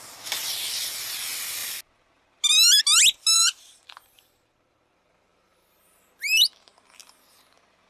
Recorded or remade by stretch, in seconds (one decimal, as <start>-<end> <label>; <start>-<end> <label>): 0.0-3.3 recorded; 3.3-6.0 remade; 6.0-7.9 recorded

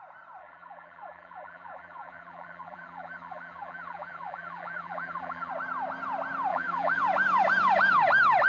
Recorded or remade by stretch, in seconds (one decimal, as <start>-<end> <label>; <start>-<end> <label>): 0.0-0.4 recorded; 0.4-5.5 remade; 5.5-6.5 recorded; 6.5-7.0 remade; 7.0-8.5 recorded

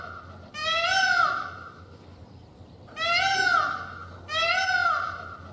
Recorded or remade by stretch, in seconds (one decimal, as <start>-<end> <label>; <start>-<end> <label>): 0.0-0.6 recorded; 0.6-2.9 remade; 2.9-5.5 recorded

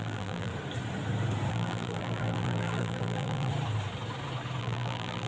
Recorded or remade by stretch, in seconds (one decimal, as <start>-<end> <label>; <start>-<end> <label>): 0.0-0.5 remade; 0.5-1.5 recorded; 1.5-3.5 remade; 3.5-4.6 recorded; 4.6-5.3 remade

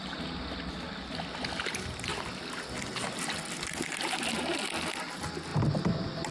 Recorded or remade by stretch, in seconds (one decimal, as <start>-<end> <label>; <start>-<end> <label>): 0.0-5.5 recorded; 5.5-6.3 remade

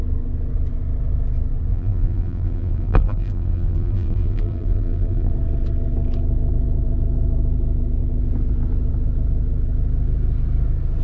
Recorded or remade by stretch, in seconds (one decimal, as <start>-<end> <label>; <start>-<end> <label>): 0.0-1.7 recorded; 1.7-5.3 remade; 5.3-11.0 recorded

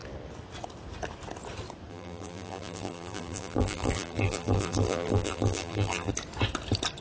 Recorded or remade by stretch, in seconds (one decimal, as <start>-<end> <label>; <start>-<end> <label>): 0.0-1.9 recorded; 1.9-6.1 remade; 6.1-7.0 recorded